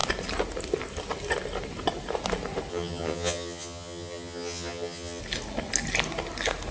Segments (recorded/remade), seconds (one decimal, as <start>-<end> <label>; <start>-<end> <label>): 0.0-2.7 recorded; 2.7-5.2 remade; 5.2-6.7 recorded